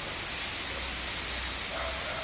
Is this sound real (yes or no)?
yes